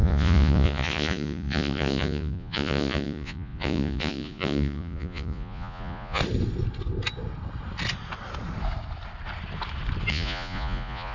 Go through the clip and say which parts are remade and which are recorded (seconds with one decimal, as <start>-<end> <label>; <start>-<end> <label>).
0.0-6.2 remade; 6.2-10.1 recorded; 10.1-11.1 remade